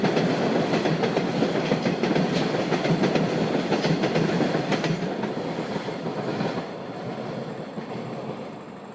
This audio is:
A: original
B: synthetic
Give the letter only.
A